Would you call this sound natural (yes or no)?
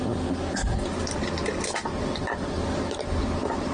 yes